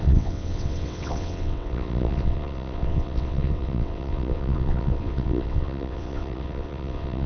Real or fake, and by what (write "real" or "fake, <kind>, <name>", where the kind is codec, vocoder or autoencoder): fake, vocoder, WaveNeXt